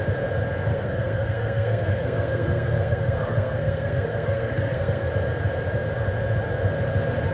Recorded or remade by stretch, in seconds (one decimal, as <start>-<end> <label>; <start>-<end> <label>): 0.0-0.7 recorded; 0.7-5.1 remade; 5.1-7.3 recorded